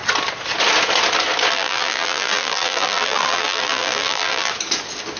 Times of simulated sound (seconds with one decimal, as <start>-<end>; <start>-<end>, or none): 1.5-4.5